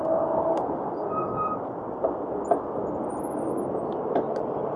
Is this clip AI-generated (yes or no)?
no